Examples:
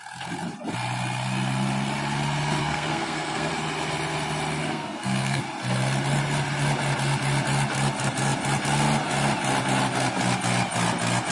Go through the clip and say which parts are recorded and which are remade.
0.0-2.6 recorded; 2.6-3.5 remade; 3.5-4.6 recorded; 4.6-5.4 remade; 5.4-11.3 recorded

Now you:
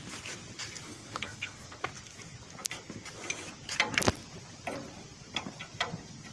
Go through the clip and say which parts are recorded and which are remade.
0.0-0.9 recorded; 0.9-1.8 remade; 1.8-6.3 recorded

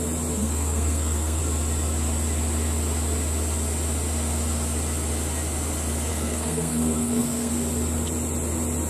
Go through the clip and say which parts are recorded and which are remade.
0.0-0.4 recorded; 0.4-1.4 remade; 1.4-6.1 recorded; 6.1-7.5 remade; 7.5-8.9 recorded

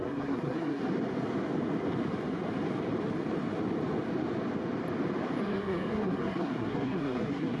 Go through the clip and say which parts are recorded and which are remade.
0.0-0.8 remade; 0.8-5.4 recorded; 5.4-7.6 remade

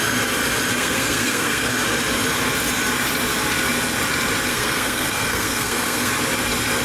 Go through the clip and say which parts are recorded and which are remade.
0.0-0.7 recorded; 0.7-1.7 remade; 1.7-4.5 recorded; 4.5-6.1 remade; 6.1-6.8 recorded

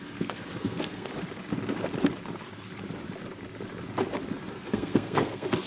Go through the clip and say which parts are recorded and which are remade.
0.0-1.1 remade; 1.1-4.5 recorded; 4.5-5.7 remade